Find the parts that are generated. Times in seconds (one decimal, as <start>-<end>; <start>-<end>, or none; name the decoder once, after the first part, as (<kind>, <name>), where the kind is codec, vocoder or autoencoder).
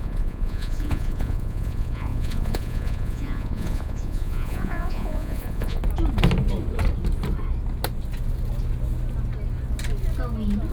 0.0-5.8 (vocoder, Vocos)